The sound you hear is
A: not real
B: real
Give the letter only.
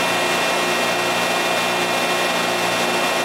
B